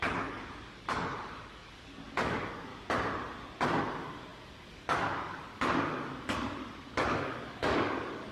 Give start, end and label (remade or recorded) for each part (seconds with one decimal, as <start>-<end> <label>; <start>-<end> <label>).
0.0-2.7 remade; 2.7-3.8 recorded; 3.8-8.3 remade